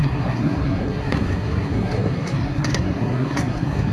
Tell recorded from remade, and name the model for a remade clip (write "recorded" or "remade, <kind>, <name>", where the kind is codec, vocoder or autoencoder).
remade, codec, SNAC